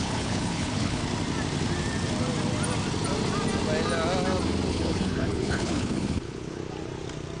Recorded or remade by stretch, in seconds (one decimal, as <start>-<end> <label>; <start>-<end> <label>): 0.0-1.0 remade; 1.0-4.7 recorded; 4.7-6.6 remade; 6.6-7.4 recorded